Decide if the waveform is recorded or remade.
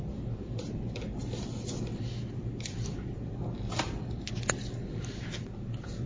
recorded